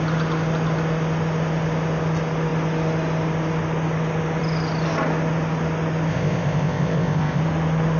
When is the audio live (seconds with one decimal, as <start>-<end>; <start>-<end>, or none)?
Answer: 0.0-6.1; 7.4-8.0